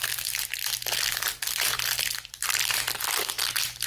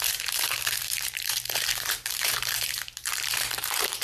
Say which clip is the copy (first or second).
second